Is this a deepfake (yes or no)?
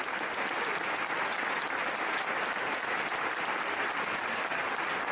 no